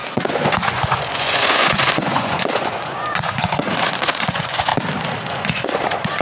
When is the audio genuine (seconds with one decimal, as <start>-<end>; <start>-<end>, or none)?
4.7-5.3